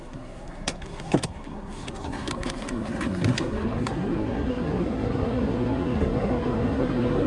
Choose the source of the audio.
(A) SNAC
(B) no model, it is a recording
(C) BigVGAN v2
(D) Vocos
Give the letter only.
A